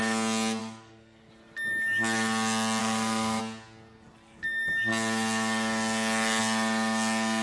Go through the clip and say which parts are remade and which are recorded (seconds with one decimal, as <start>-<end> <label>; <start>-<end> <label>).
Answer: 0.0-0.6 recorded; 0.6-1.3 remade; 1.3-2.8 recorded; 2.8-3.4 remade; 3.4-7.4 recorded